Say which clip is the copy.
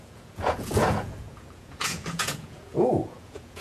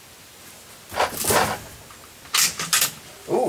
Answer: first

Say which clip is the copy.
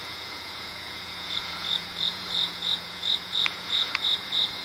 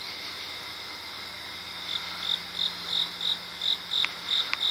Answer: first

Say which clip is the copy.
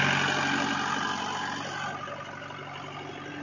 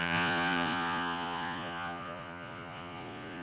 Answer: second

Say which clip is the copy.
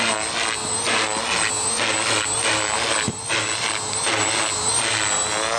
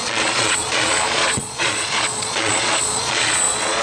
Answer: second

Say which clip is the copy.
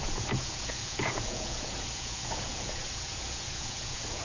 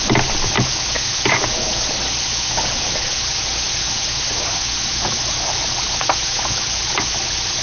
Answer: first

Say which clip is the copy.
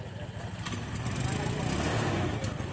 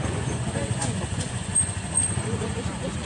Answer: second